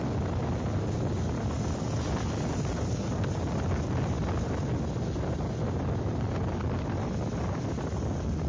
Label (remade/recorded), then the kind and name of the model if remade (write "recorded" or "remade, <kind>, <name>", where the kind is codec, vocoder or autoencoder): recorded